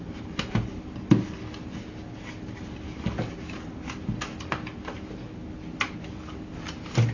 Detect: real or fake real